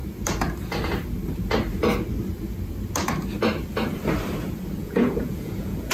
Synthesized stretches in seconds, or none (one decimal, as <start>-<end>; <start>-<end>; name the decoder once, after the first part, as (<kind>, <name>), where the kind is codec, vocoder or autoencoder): 4.8-5.9 (vocoder, Vocos)